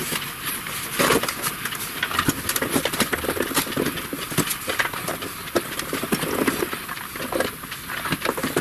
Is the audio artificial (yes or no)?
no